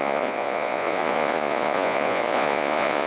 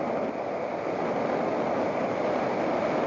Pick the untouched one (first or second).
second